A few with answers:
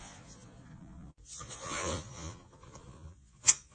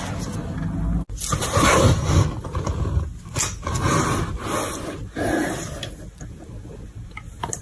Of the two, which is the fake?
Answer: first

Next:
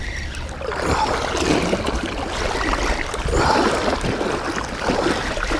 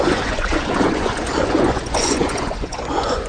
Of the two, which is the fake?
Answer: second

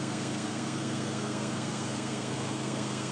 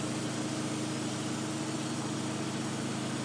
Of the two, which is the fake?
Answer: first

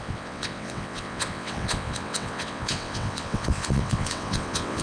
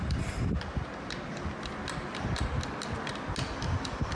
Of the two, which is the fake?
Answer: first